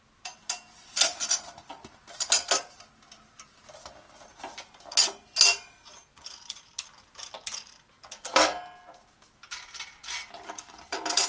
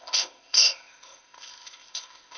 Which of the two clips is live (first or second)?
first